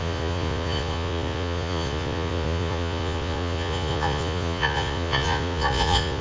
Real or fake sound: fake